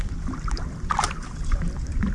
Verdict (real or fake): real